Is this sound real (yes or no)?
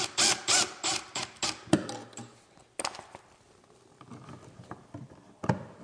yes